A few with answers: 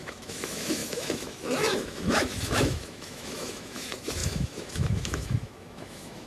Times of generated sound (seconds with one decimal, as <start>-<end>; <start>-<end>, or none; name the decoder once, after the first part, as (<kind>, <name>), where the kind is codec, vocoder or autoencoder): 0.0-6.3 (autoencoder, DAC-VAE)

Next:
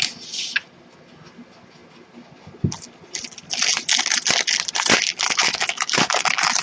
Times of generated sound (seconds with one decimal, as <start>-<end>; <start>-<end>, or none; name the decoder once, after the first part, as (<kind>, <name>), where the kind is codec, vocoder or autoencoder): 5.4-6.6 (autoencoder, DAC-VAE)

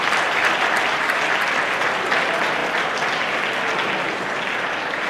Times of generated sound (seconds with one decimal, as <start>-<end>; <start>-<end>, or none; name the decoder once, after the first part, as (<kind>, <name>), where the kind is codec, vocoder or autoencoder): none

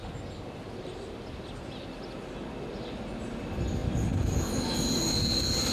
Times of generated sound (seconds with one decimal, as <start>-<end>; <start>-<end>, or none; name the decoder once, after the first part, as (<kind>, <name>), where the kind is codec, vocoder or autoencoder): none